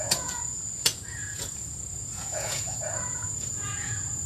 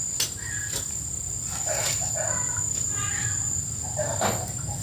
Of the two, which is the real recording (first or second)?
second